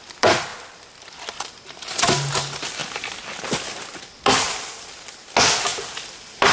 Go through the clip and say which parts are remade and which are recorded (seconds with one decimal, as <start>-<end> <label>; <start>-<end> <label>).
0.0-6.5 recorded